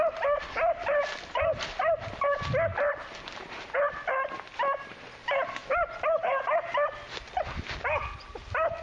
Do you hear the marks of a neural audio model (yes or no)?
no